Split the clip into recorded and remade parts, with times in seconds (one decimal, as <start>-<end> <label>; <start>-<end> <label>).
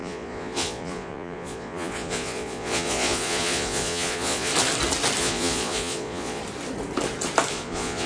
0.0-4.5 remade; 4.5-5.2 recorded; 5.2-6.4 remade; 6.4-7.5 recorded; 7.5-8.1 remade